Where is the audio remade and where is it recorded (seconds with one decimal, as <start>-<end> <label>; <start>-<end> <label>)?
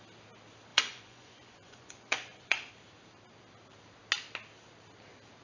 0.0-0.7 recorded; 0.7-2.7 remade; 2.7-5.4 recorded